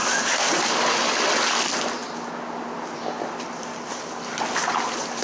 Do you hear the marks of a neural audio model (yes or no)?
no